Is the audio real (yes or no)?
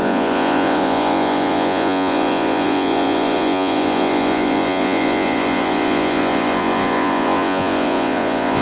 no